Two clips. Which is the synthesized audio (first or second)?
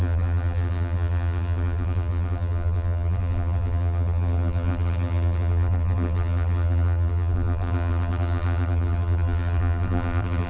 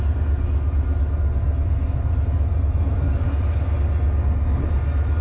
first